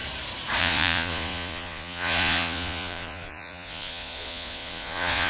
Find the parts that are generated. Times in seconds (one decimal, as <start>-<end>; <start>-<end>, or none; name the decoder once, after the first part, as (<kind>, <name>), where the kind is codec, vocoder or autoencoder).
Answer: 0.6-5.3 (vocoder, Vocos)